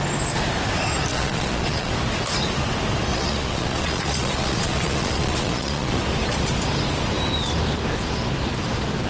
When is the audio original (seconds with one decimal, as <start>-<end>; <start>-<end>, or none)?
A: 0.0-1.1; 1.9-3.1; 6.0-9.1